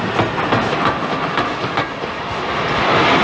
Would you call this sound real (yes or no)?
yes